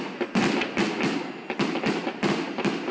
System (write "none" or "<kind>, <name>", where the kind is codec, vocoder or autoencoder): none